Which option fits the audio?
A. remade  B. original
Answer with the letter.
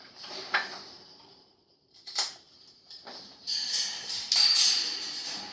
A